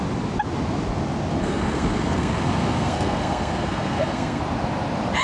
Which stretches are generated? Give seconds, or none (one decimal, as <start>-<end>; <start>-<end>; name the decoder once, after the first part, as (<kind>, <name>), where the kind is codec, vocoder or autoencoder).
1.3-4.4 (codec, SNAC)